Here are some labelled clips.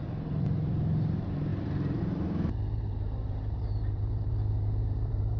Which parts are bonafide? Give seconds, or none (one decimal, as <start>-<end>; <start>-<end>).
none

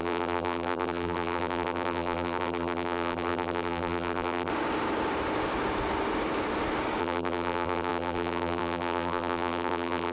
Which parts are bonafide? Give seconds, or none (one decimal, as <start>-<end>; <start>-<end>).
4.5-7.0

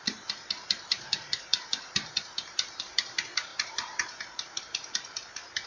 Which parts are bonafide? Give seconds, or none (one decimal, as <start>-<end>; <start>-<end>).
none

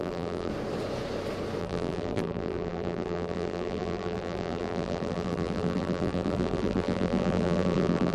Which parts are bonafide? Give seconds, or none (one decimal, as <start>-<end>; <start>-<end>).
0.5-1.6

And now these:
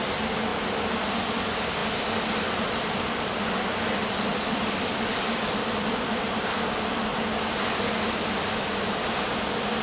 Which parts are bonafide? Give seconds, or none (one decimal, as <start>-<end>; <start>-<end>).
0.0-1.8; 6.2-9.8